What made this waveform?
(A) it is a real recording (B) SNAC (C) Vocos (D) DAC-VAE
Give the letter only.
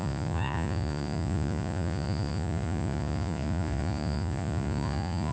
C